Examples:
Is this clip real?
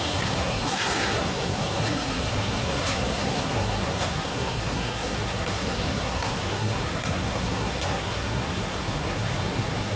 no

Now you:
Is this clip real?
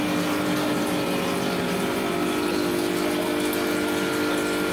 yes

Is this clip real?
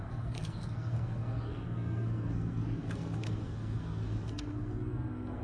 no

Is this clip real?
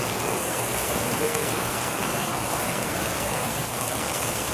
no